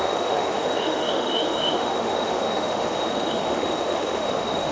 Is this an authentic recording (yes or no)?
no